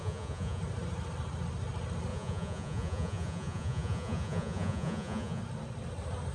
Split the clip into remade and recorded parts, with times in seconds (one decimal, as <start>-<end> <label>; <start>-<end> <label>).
0.0-0.6 remade; 0.6-2.1 recorded; 2.1-5.4 remade; 5.4-6.3 recorded